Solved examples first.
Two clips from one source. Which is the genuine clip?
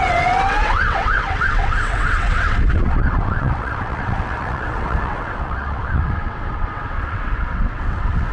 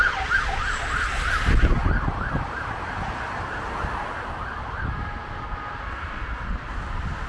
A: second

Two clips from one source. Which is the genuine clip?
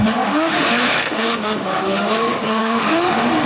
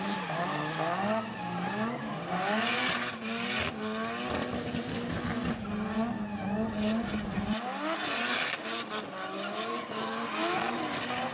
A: second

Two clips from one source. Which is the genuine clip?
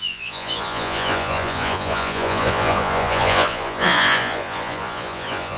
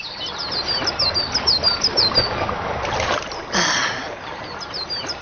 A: second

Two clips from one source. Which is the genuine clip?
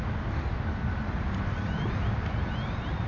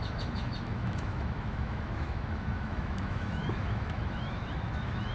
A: first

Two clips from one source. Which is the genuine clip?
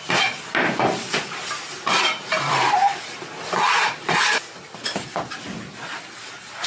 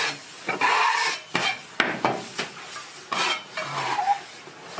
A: second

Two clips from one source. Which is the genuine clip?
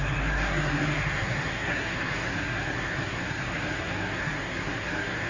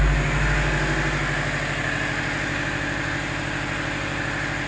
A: second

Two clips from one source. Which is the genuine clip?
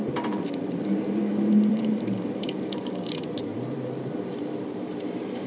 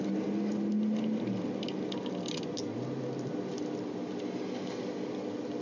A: second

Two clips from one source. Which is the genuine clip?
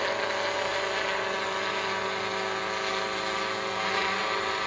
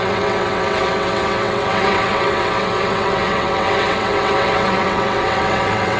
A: first